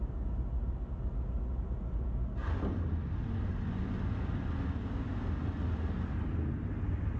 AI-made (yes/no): no